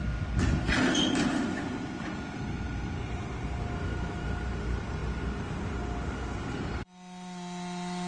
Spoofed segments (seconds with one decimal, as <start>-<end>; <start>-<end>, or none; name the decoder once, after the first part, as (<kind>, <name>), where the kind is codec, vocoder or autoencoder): none